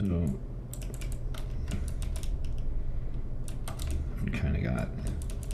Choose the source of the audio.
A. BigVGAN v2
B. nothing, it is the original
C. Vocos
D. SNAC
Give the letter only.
B